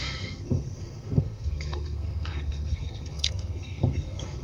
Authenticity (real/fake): fake